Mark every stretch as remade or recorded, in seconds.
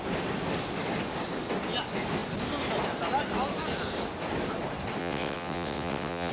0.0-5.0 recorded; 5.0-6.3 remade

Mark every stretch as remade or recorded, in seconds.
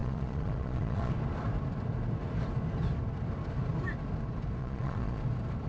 0.0-1.1 remade; 1.1-4.6 recorded; 4.6-5.2 remade; 5.2-5.7 recorded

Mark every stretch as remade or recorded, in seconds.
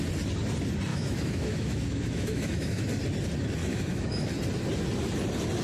0.0-0.9 recorded; 0.9-2.9 remade; 2.9-3.6 recorded; 3.6-4.3 remade; 4.3-5.6 recorded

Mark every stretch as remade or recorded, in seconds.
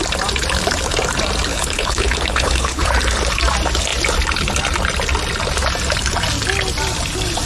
0.0-1.5 recorded; 1.5-2.9 remade; 2.9-7.4 recorded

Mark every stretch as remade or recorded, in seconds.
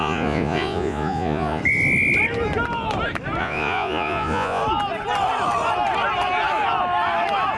0.0-1.6 remade; 1.6-3.4 recorded; 3.4-4.6 remade; 4.6-7.6 recorded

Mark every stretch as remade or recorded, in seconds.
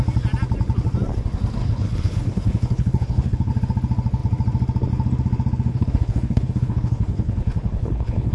0.0-1.6 recorded; 1.6-3.5 remade; 3.5-5.7 recorded; 5.7-8.3 remade